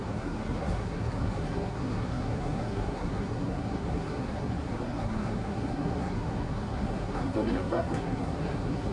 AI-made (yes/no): yes